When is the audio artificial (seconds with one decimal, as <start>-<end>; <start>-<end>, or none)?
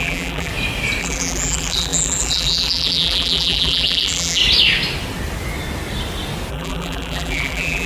0.0-0.5; 1.0-4.4; 6.5-7.9